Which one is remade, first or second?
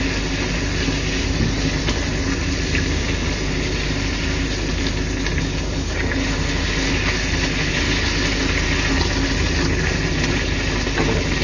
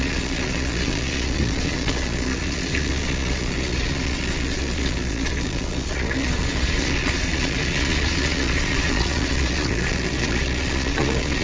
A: second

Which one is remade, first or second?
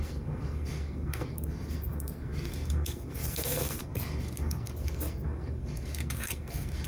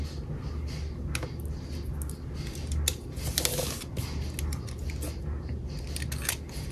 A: first